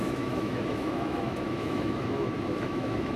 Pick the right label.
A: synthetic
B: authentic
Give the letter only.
A